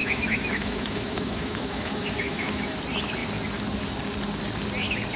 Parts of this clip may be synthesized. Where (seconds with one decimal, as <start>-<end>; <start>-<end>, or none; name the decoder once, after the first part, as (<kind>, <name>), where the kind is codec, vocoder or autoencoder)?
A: 0.0-2.8 (autoencoder, DAC-VAE)